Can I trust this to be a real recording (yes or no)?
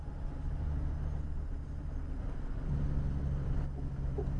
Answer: yes